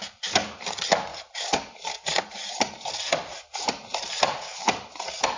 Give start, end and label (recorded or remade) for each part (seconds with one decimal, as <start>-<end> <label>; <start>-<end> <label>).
0.0-1.1 recorded; 1.1-2.2 remade; 2.2-3.3 recorded; 3.3-5.4 remade